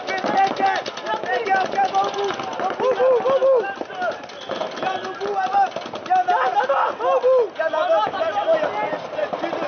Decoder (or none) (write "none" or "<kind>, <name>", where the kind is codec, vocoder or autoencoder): none